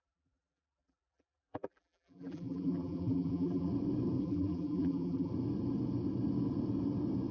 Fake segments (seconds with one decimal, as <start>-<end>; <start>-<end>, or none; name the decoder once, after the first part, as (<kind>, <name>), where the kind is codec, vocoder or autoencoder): 0.0-3.7 (vocoder, BigVGAN v2); 4.2-5.3